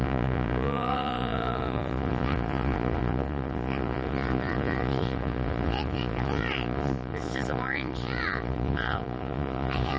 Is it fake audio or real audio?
fake